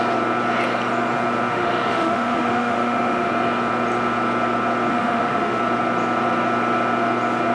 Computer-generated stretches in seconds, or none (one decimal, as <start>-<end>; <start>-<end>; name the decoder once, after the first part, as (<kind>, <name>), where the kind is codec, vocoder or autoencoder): 1.5-3.3 (autoencoder, DAC-VAE); 4.9-5.6